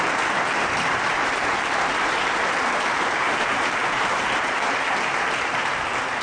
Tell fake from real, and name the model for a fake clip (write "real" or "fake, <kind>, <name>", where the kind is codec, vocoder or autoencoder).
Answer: fake, vocoder, BigVGAN v2